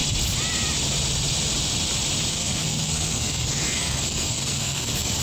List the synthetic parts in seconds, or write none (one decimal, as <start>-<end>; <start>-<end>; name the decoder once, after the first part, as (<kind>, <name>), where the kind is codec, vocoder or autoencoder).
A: 2.3-5.2 (codec, SNAC)